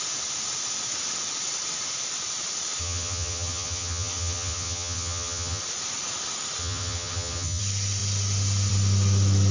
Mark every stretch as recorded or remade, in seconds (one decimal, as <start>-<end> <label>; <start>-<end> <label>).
0.0-2.8 recorded; 2.8-5.6 remade; 5.6-6.6 recorded; 6.6-7.6 remade; 7.6-9.5 recorded